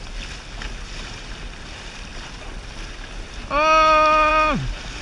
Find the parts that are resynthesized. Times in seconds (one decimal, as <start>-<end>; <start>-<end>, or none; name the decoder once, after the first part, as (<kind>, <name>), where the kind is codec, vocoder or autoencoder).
none